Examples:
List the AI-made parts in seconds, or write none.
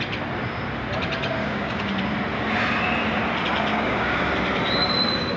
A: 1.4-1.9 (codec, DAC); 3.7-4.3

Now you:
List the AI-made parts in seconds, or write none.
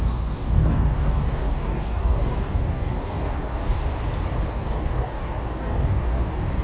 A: 0.0-3.9 (codec, DAC); 4.5-6.6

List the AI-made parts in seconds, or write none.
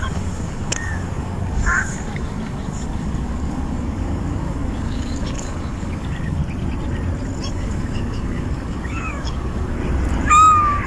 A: 0.0-6.4 (codec, DAC); 7.5-9.8; 10.3-10.9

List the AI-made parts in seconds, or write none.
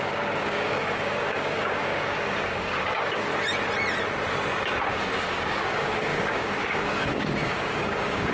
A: 0.0-3.3 (codec, DAC); 4.9-8.3